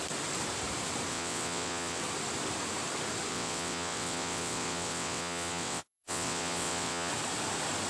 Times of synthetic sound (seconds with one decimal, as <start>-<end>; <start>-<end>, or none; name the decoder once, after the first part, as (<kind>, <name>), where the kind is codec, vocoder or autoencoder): 1.1-2.0 (vocoder, WaveNeXt); 3.3-7.1